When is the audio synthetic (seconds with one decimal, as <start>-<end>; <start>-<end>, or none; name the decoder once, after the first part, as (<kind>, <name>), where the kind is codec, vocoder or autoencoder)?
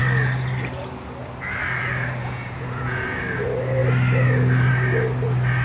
2.2-3.2 (vocoder, Vocos)